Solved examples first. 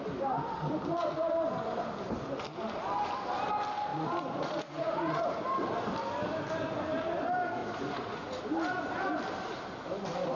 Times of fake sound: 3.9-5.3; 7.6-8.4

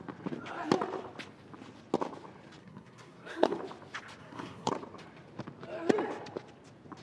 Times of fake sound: 2.6-3.6; 4.2-4.7

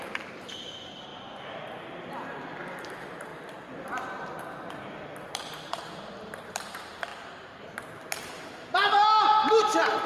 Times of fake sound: 0.0-10.1

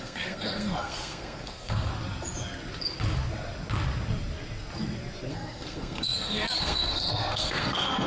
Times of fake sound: 0.0-1.9; 5.3-8.1